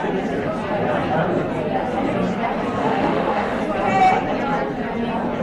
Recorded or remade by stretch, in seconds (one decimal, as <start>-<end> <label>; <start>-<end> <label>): 0.0-2.8 recorded; 2.8-3.6 remade; 3.6-5.4 recorded